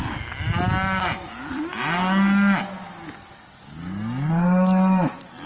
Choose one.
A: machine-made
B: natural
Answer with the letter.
B